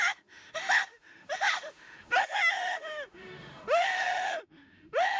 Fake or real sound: fake